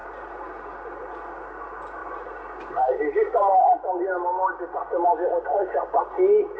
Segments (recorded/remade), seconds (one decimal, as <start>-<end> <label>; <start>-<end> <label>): 0.0-6.6 recorded